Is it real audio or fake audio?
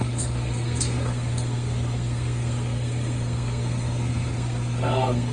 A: fake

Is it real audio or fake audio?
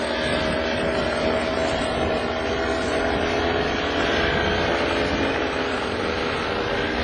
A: real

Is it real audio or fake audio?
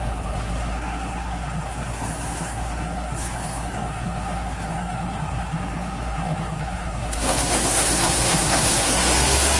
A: fake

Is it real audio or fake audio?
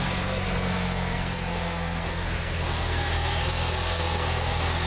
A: fake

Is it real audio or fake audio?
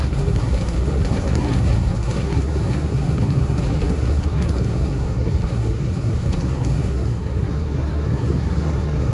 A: fake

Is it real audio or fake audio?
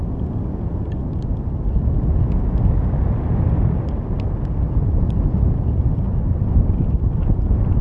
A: real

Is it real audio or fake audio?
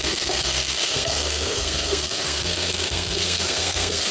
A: fake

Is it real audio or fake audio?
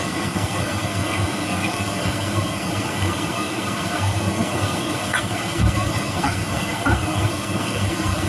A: fake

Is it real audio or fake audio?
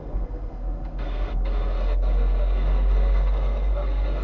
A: fake